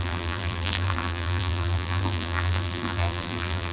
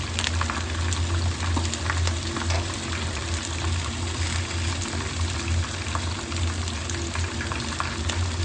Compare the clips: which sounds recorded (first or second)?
second